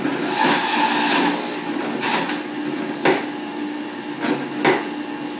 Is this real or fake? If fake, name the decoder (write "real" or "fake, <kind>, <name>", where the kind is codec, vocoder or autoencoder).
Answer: real